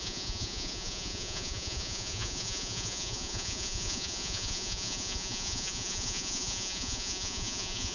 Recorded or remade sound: remade